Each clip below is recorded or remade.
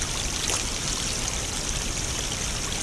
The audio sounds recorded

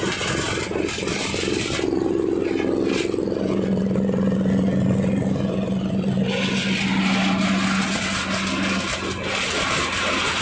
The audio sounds recorded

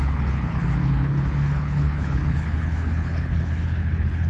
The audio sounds remade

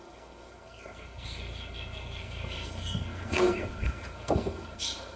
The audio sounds remade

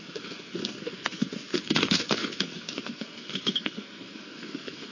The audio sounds remade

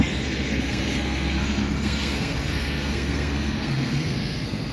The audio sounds remade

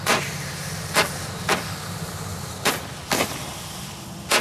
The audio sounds recorded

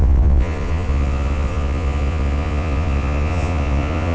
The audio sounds remade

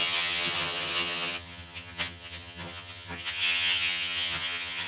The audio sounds remade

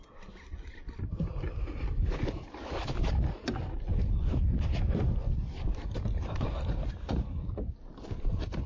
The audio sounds recorded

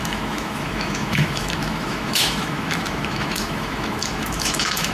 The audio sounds remade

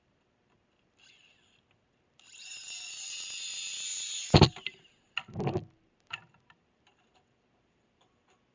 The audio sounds recorded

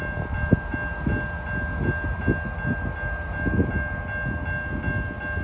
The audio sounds recorded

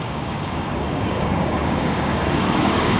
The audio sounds remade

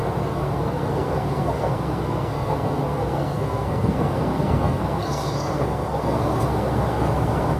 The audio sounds remade